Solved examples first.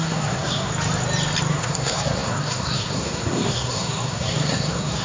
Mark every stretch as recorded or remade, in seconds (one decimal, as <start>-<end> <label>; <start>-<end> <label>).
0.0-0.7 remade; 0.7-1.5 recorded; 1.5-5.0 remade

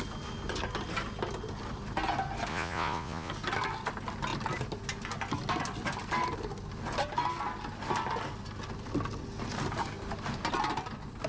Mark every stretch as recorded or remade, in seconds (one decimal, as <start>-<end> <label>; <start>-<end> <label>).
0.0-2.5 recorded; 2.5-3.3 remade; 3.3-11.3 recorded

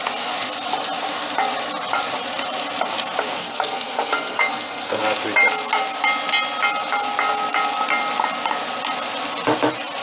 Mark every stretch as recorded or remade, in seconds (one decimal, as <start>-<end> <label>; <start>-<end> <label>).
0.0-3.4 recorded; 3.4-5.0 remade; 5.0-10.0 recorded

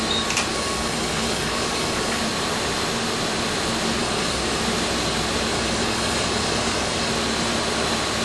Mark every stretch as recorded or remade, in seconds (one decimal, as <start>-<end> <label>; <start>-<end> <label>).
0.0-0.5 recorded; 0.5-2.2 remade; 2.2-4.0 recorded; 4.0-4.6 remade; 4.6-5.5 recorded; 5.5-7.1 remade; 7.1-8.2 recorded